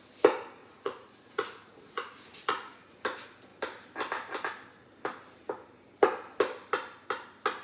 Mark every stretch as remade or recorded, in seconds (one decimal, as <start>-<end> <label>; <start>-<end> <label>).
0.0-0.6 recorded; 0.6-2.7 remade; 2.7-7.6 recorded

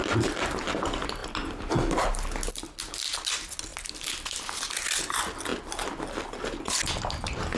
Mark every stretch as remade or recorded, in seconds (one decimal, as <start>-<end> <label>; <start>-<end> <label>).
0.0-7.6 recorded